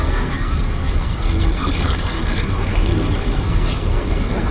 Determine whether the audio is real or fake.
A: fake